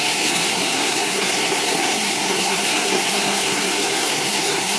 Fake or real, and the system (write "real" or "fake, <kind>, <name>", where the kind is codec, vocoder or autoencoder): fake, codec, SNAC